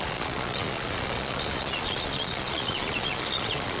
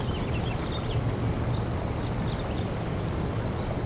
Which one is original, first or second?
second